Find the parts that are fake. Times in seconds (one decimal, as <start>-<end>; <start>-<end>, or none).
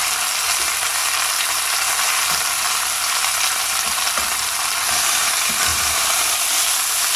5.7-6.3